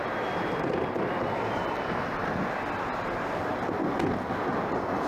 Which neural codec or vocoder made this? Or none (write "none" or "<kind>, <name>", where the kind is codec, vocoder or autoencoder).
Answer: none